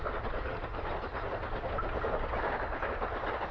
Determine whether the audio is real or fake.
real